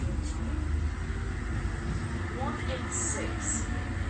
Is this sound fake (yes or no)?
no